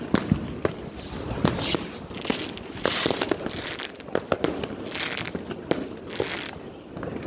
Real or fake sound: real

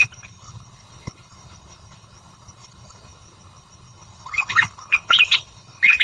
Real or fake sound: fake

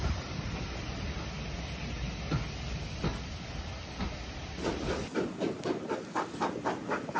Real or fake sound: real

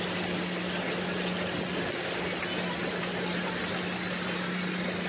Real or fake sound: real